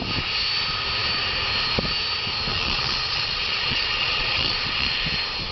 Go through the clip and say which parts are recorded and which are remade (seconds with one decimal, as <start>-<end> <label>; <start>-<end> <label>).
0.0-2.5 recorded; 2.5-5.0 remade; 5.0-5.5 recorded